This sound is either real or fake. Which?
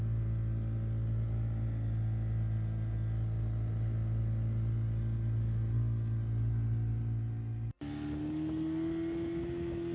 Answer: real